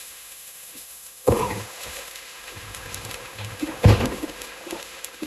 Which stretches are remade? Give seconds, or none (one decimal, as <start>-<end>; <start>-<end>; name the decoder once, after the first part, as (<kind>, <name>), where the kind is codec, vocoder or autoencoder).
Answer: 0.0-5.3 (autoencoder, DAC-VAE)

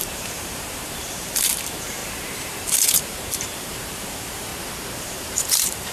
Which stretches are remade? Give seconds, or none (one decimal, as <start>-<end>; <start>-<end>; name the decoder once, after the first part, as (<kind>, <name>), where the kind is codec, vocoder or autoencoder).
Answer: 0.0-4.5 (vocoder, BigVGAN v2); 5.0-5.9

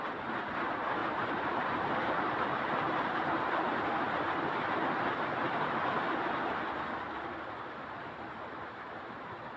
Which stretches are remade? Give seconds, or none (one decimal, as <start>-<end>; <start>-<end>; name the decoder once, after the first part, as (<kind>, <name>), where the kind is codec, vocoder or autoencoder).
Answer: 1.0-4.3 (vocoder, BigVGAN v2)

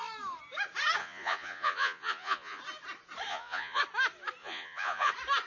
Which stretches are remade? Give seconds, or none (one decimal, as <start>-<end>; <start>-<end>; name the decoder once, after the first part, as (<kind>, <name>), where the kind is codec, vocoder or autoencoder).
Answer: 1.0-2.6 (vocoder, Vocos); 3.3-3.8; 4.4-5.1